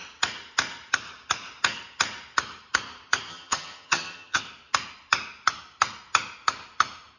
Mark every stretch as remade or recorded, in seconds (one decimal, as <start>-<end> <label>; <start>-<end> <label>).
0.0-3.3 recorded; 3.3-4.4 remade; 4.4-7.2 recorded